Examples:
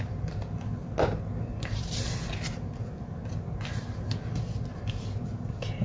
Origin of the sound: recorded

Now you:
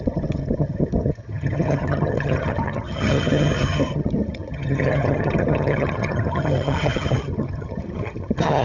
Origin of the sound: remade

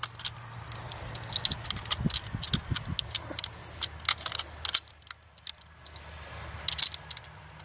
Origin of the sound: recorded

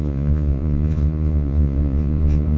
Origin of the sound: remade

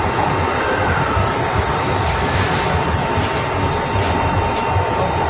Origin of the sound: recorded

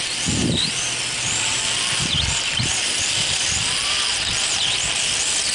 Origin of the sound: recorded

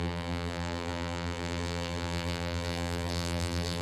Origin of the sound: remade